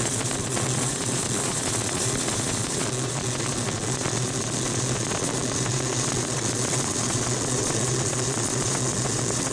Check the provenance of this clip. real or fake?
fake